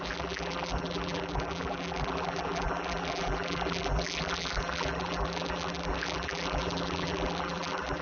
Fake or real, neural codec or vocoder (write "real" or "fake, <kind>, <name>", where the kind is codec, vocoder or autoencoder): fake, vocoder, BigVGAN v2